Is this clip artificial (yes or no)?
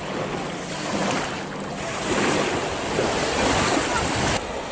no